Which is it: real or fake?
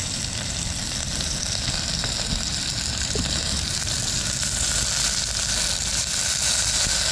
real